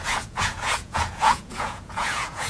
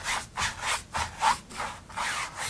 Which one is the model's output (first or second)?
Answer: first